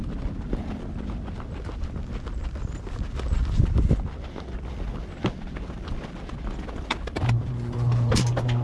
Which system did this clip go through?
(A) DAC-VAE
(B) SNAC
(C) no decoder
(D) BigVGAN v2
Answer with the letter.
C